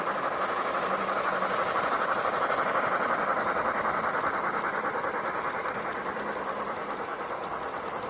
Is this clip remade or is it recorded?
remade